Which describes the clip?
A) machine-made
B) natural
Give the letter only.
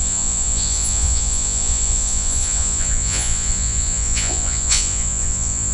A